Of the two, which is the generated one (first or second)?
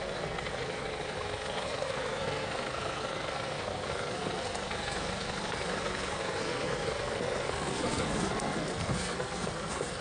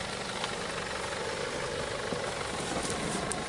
first